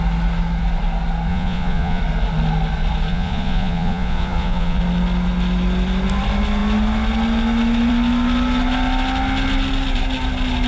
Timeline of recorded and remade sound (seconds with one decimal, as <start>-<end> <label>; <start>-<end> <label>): 0.0-1.3 recorded; 1.3-2.0 remade; 2.0-3.1 recorded; 3.1-4.8 remade; 4.8-10.7 recorded